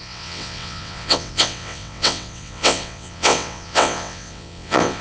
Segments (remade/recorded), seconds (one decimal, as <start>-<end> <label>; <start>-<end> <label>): 0.0-5.0 remade